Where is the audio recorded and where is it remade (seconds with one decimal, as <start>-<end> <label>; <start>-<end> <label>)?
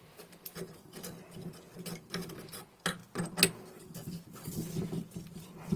0.0-1.2 remade; 1.2-5.8 recorded